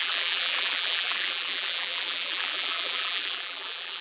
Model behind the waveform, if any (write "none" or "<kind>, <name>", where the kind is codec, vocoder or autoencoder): vocoder, BigVGAN v2